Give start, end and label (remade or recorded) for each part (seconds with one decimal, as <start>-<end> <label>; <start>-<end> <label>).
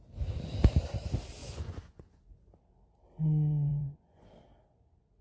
0.0-1.4 recorded; 1.4-2.5 remade; 2.5-3.7 recorded; 3.7-4.3 remade; 4.3-5.2 recorded